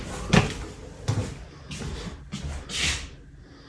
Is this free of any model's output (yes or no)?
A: yes